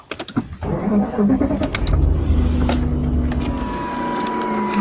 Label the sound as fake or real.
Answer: real